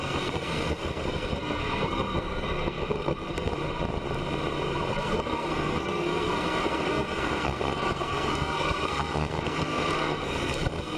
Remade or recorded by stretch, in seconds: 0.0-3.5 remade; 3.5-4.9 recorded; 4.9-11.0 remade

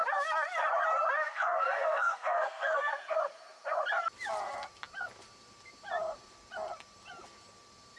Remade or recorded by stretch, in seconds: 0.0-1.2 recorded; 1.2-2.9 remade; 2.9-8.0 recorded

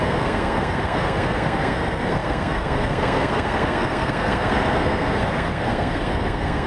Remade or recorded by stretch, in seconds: 0.0-6.7 remade